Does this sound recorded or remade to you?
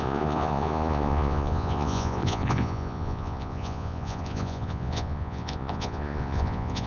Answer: remade